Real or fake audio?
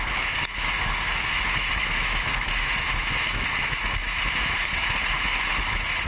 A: fake